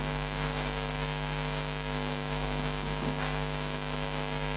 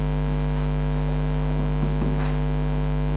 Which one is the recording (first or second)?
second